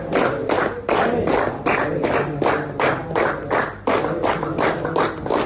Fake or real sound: real